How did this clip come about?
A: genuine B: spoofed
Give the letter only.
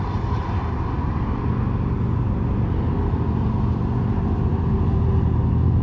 A